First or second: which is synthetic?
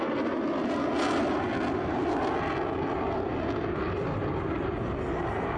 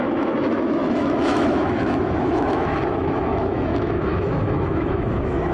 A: second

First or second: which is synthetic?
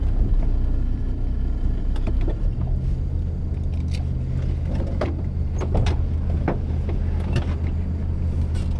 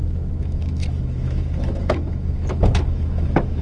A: second